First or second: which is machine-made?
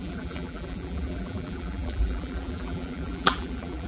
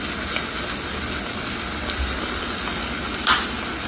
first